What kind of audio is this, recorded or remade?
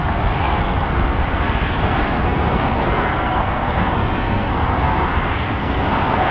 remade